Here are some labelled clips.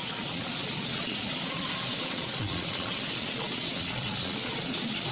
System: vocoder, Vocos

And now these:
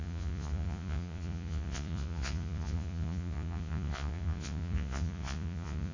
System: vocoder, Vocos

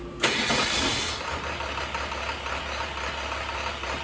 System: none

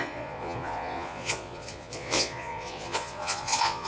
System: vocoder, Vocos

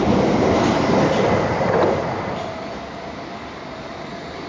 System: none